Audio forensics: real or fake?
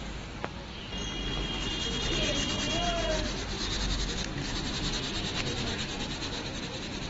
real